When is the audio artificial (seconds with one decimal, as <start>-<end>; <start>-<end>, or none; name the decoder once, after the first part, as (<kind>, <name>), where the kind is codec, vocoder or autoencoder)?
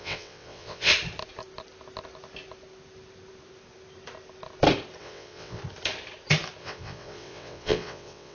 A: 0.0-0.9 (vocoder, WaveNeXt); 5.0-5.6; 6.6-8.3